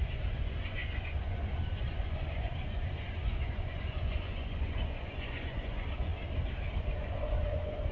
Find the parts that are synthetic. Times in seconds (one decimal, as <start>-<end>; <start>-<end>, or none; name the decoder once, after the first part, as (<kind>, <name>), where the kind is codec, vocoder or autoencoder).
0.0-6.1 (vocoder, Vocos); 6.8-7.9